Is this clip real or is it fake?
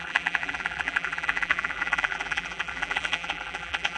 fake